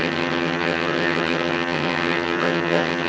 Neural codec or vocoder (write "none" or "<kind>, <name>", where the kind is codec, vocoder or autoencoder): vocoder, HiFi-GAN